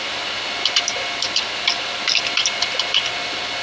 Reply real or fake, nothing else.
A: real